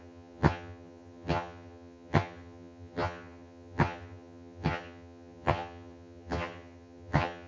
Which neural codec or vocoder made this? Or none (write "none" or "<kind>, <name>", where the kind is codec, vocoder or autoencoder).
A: vocoder, HiFi-GAN